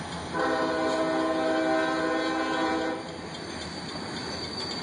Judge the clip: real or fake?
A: real